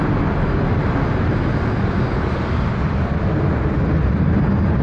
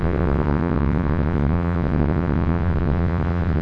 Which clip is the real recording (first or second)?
first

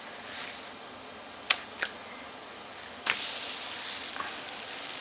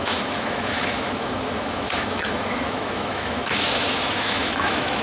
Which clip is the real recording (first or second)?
first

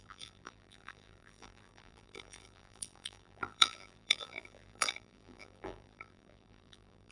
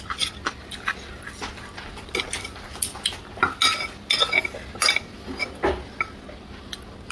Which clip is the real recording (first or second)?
second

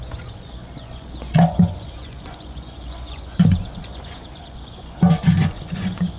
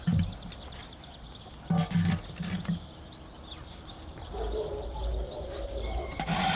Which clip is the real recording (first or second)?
second